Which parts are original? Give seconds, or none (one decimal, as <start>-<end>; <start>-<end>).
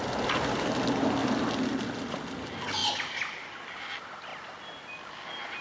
0.0-5.6